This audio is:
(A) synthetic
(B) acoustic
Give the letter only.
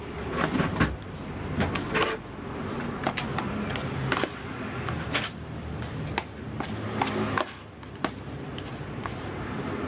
B